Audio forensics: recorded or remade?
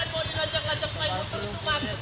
recorded